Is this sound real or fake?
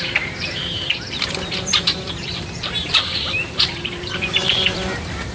fake